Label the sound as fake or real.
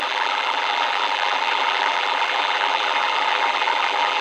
fake